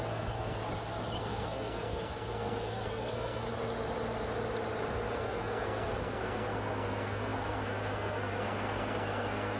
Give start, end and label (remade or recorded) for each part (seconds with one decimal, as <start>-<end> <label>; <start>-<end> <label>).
0.0-0.6 remade; 0.6-1.2 recorded; 1.2-3.4 remade; 3.4-5.1 recorded; 5.1-9.6 remade

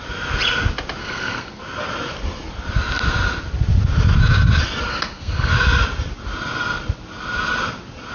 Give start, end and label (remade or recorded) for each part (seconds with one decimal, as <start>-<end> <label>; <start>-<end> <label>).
0.0-1.0 recorded; 1.0-1.6 remade; 1.6-4.9 recorded; 4.9-5.5 remade; 5.5-8.1 recorded

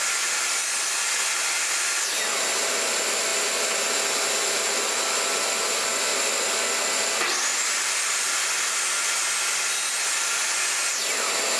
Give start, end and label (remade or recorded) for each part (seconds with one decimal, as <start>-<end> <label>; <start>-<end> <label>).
0.0-11.6 recorded

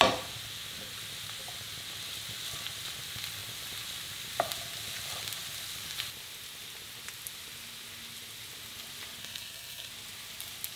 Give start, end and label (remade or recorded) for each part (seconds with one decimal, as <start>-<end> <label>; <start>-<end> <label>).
0.0-9.2 recorded; 9.2-9.9 remade; 9.9-10.8 recorded